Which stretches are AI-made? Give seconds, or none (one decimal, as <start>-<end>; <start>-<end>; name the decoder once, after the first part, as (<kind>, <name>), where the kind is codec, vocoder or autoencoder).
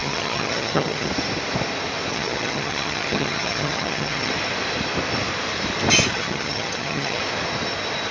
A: 0.0-1.1 (vocoder, HiFi-GAN); 2.1-4.3; 6.1-7.2